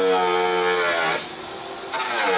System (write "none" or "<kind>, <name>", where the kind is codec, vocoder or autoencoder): none